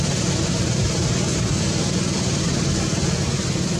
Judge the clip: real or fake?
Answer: real